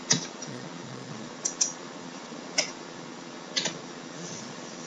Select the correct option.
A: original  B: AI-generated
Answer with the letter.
B